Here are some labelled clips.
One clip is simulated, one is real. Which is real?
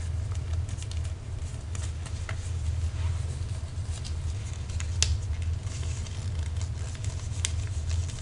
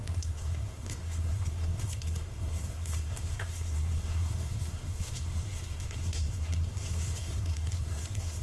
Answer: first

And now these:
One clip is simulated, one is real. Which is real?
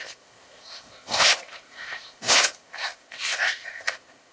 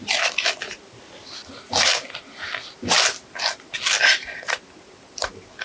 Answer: second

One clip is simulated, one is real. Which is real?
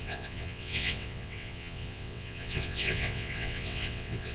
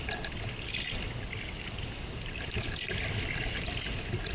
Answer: second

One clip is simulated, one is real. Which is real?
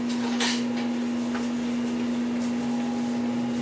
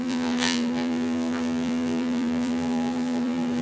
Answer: first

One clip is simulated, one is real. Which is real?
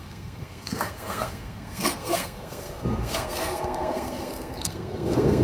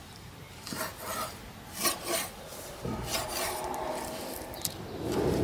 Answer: second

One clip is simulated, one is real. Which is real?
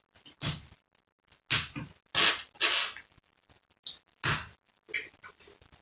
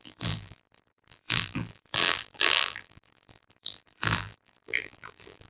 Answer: first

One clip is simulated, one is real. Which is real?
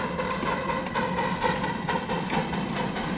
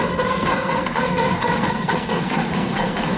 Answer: first